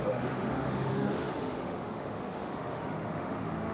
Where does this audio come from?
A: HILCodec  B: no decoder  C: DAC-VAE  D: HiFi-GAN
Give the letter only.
C